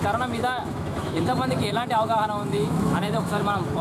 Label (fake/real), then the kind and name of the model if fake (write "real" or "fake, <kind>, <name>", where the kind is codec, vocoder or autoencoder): fake, autoencoder, DAC-VAE